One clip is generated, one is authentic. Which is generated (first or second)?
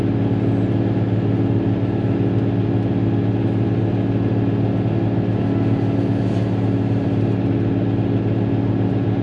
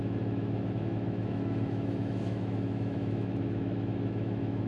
second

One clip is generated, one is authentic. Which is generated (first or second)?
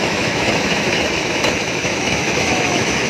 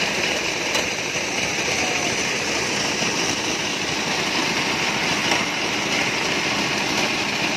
first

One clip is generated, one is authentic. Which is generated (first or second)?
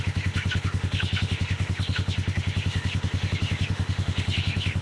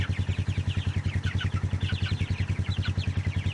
first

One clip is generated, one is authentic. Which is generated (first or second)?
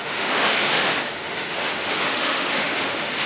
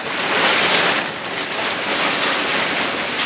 first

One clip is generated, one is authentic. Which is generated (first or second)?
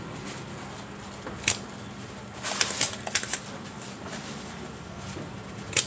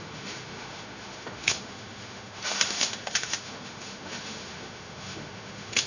second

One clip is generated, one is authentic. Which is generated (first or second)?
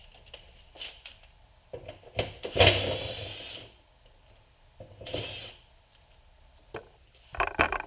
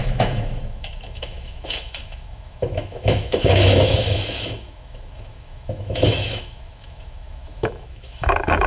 second